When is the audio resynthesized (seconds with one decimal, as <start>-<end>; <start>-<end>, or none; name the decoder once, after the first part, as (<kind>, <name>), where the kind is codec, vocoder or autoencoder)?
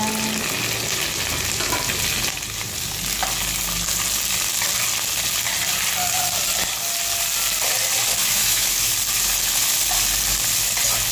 8.2-8.9 (autoencoder, DAC-VAE)